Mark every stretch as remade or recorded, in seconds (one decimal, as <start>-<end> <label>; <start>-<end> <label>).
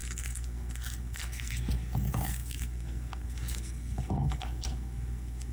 0.0-5.5 remade